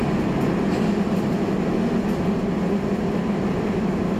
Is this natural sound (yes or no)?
yes